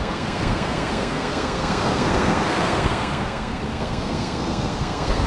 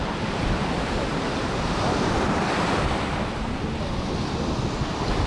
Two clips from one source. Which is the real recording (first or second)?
second